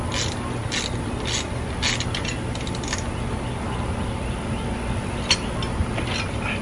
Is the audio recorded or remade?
recorded